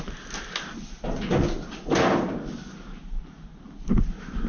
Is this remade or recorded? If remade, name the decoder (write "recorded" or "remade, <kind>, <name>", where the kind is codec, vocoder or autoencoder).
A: recorded